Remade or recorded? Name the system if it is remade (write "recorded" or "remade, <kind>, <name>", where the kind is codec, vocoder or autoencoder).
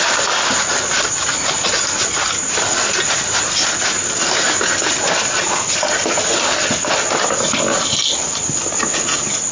recorded